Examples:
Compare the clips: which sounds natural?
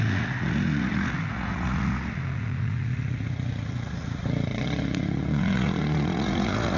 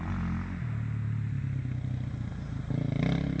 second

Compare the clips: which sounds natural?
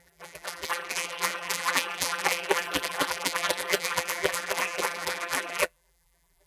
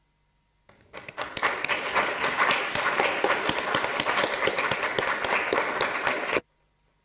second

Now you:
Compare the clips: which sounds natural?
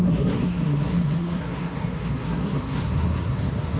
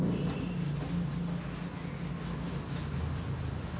second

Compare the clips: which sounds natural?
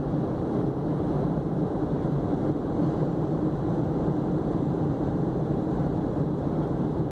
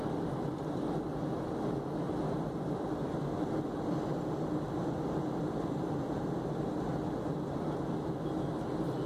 second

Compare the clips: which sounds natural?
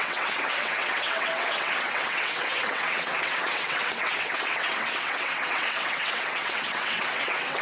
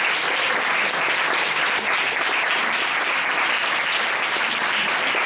second